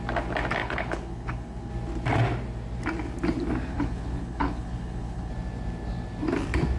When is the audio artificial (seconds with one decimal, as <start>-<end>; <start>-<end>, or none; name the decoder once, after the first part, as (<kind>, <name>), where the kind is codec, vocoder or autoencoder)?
0.6-1.7 (codec, HILCodec); 3.7-5.3